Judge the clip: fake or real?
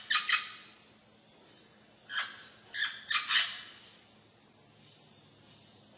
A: real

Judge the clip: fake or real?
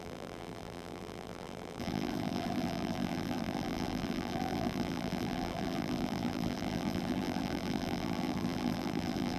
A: fake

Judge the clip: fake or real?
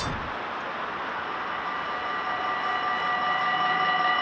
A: real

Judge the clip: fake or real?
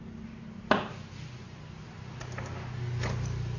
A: real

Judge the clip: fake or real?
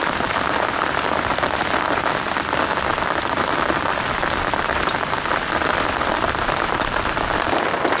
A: real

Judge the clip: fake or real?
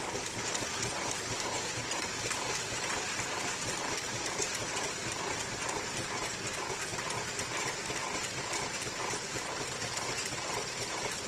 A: fake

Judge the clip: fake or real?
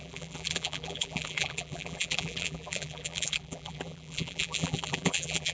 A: fake